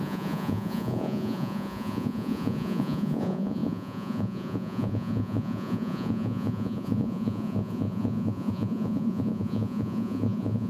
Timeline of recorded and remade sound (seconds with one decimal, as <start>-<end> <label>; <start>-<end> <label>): 0.0-10.7 remade